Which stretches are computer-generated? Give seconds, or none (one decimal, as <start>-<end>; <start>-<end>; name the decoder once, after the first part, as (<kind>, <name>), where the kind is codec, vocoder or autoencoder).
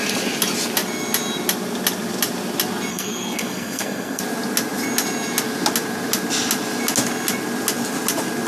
2.9-4.2 (codec, SNAC)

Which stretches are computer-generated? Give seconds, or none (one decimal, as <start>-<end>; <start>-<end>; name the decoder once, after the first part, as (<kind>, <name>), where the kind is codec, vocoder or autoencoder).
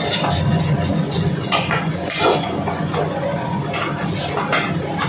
0.5-3.6 (vocoder, Vocos)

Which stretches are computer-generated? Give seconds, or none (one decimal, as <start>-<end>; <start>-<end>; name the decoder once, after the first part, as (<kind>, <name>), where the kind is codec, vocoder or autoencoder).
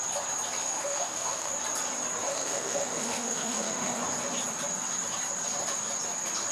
0.6-1.5 (autoencoder, DAC-VAE); 2.3-4.0